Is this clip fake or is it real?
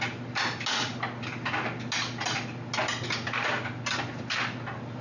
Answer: real